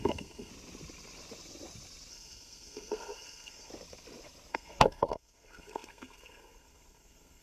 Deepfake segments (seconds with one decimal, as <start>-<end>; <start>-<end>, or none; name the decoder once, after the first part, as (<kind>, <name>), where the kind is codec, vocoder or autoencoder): 0.0-0.5 (codec, SNAC); 2.1-3.7; 4.5-7.4